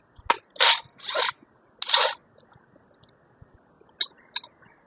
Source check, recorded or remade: recorded